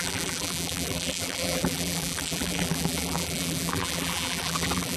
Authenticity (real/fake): fake